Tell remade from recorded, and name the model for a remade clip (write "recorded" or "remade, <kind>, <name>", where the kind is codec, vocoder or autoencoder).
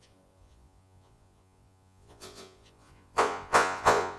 remade, vocoder, Vocos